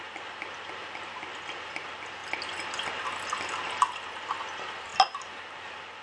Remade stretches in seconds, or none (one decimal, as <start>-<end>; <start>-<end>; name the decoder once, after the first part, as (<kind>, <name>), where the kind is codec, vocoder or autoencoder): none